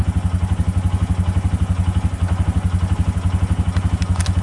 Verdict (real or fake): real